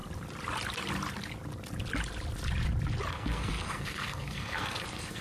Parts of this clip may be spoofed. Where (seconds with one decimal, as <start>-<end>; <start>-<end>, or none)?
3.1-5.2